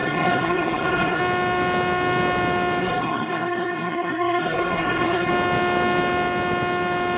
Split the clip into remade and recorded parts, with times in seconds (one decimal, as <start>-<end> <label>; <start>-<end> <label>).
0.0-1.2 remade; 1.2-2.8 recorded; 2.8-5.3 remade; 5.3-7.2 recorded